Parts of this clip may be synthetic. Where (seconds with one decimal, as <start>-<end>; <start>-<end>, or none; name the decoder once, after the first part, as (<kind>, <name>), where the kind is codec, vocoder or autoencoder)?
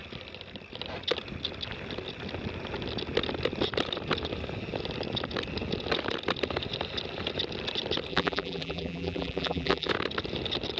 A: 8.1-9.9 (vocoder, BigVGAN v2)